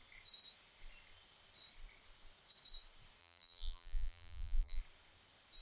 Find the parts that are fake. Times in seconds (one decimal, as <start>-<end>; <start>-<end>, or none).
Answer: 3.2-4.8